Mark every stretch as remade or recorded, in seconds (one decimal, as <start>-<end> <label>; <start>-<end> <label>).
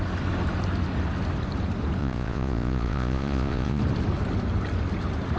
0.0-2.0 recorded; 2.0-3.8 remade; 3.8-5.4 recorded